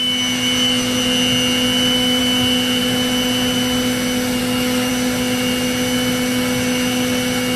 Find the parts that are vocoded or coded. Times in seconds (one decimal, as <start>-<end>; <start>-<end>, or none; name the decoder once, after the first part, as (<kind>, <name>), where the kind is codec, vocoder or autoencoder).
4.4-4.9 (codec, DAC)